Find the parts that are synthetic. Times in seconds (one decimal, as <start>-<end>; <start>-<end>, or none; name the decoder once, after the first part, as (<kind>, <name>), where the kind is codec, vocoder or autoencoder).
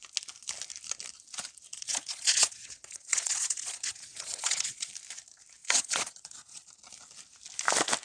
1.7-4.9 (vocoder, Vocos); 5.6-6.6